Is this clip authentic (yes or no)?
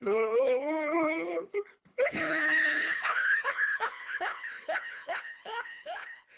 no